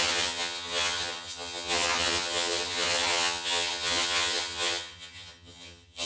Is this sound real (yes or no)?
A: no